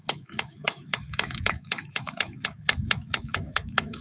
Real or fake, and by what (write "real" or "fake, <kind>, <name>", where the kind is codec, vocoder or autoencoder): fake, autoencoder, DAC-VAE